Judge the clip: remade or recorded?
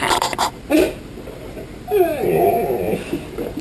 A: recorded